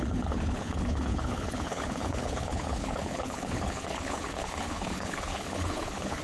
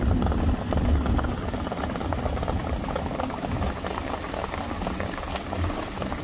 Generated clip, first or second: first